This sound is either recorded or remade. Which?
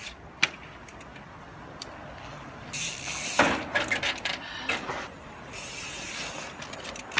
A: recorded